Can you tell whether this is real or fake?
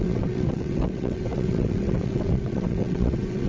fake